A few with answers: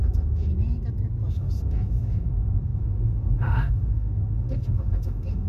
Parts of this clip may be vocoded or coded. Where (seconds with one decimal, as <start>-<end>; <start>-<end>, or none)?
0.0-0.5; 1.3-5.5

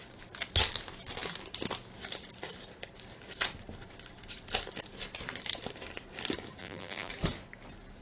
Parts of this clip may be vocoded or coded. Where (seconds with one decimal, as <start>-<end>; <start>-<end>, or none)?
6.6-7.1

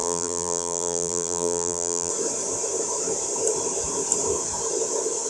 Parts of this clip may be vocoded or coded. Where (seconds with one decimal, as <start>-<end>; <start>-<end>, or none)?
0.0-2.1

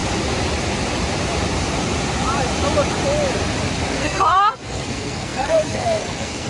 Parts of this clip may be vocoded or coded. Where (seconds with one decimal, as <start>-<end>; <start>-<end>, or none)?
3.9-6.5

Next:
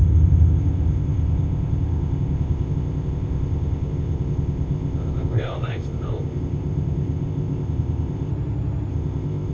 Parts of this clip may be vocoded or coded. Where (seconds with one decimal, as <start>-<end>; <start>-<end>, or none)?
0.0-8.3; 8.9-9.5